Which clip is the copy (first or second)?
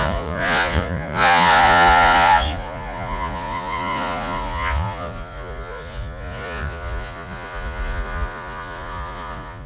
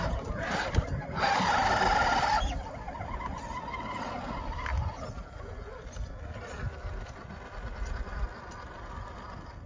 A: first